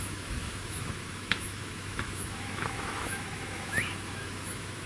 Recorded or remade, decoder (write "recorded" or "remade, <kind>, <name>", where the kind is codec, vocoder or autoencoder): remade, autoencoder, DAC-VAE